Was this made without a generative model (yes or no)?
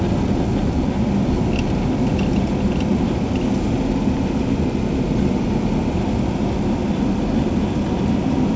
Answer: yes